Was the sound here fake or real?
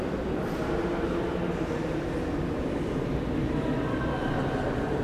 real